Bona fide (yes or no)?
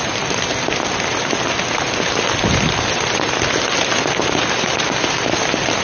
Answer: yes